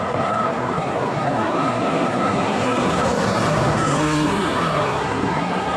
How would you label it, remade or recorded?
remade